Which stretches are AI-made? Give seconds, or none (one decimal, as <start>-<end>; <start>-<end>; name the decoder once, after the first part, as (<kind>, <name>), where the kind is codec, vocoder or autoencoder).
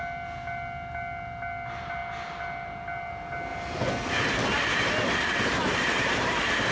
none